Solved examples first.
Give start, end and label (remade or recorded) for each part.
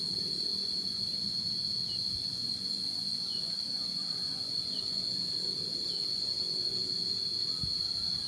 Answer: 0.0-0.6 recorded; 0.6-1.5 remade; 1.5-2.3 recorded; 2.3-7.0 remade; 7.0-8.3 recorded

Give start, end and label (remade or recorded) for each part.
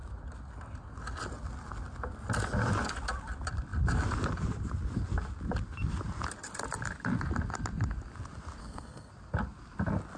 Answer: 0.0-8.6 recorded; 8.6-9.1 remade; 9.1-10.2 recorded